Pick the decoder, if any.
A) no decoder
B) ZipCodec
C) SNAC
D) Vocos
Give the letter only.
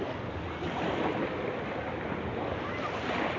A